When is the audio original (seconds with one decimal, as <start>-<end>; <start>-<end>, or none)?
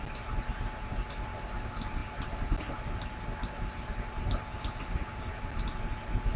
0.0-6.4